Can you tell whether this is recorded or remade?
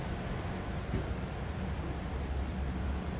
recorded